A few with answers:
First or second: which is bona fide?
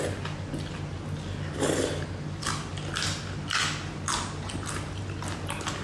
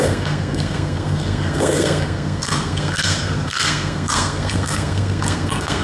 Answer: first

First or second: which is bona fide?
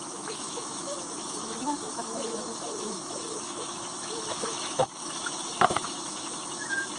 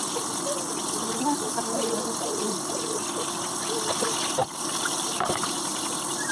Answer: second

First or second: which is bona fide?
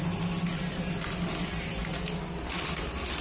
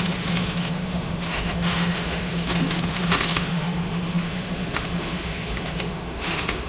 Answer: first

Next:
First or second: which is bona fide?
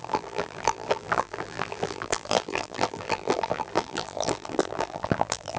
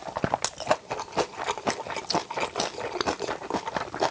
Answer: second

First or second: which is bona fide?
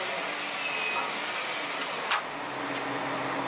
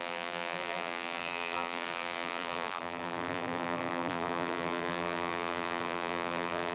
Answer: first